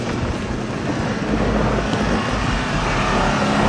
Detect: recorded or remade recorded